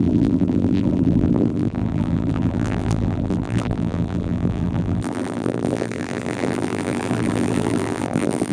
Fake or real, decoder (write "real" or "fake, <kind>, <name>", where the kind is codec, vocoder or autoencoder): fake, vocoder, BigVGAN v2